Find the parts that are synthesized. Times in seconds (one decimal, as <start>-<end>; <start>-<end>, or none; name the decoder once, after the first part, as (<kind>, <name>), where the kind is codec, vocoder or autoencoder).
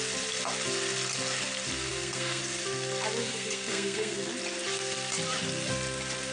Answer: 1.9-2.4 (codec, SNAC); 3.2-4.3